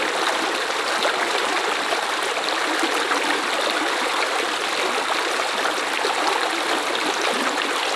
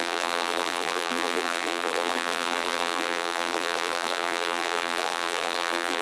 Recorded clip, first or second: first